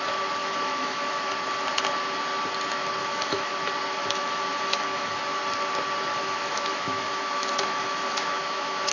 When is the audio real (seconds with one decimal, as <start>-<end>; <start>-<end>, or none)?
0.0-0.4; 1.2-3.0; 3.5-4.0; 5.4-6.1